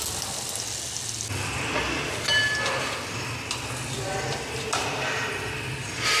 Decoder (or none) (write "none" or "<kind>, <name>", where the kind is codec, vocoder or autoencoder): none